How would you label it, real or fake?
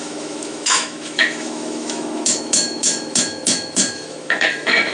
fake